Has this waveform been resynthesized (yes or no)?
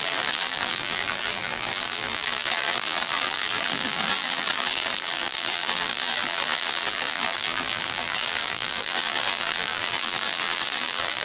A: yes